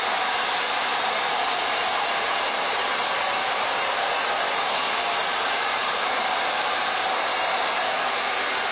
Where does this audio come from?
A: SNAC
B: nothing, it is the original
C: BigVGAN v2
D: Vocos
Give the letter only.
C